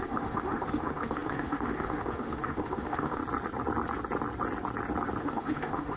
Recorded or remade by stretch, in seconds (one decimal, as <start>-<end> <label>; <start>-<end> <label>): 0.0-3.2 remade; 3.2-5.2 recorded; 5.2-6.0 remade